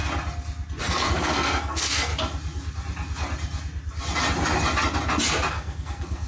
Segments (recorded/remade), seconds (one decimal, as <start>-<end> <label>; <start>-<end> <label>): 0.0-0.8 recorded; 0.8-2.1 remade; 2.1-5.5 recorded; 5.5-6.3 remade

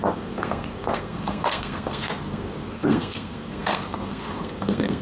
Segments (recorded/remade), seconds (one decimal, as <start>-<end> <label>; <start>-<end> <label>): 0.0-5.0 remade